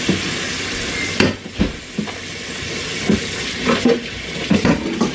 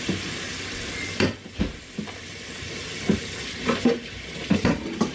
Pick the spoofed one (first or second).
second